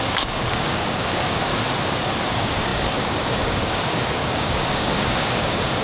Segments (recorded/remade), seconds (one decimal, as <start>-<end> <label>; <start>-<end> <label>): 0.0-1.5 remade; 1.5-2.3 recorded; 2.3-5.8 remade